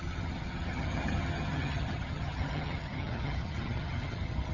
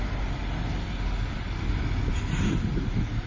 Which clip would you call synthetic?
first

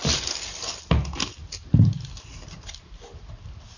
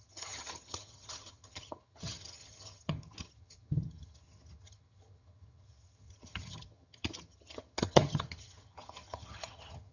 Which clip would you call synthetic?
second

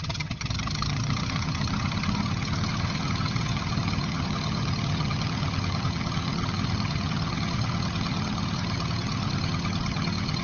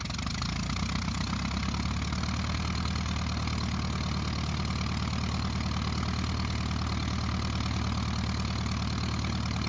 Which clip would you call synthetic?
first